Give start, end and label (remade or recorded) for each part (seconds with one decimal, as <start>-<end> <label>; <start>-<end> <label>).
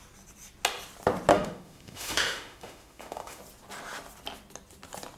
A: 0.0-1.3 recorded; 1.3-3.4 remade; 3.4-5.2 recorded